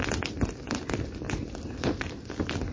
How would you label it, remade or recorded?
recorded